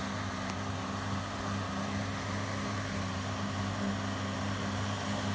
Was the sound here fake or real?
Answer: real